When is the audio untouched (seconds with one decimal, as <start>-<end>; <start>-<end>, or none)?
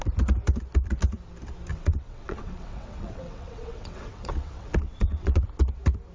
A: 0.0-1.7; 5.4-6.1